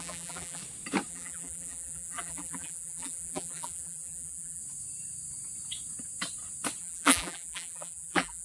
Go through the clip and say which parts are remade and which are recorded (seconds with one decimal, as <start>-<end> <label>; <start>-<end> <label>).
0.0-0.6 remade; 0.6-1.1 recorded; 1.1-4.6 remade; 4.6-6.8 recorded; 6.8-8.4 remade